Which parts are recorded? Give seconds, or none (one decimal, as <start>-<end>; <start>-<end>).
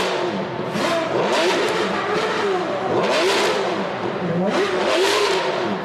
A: 0.0-4.7; 5.3-5.8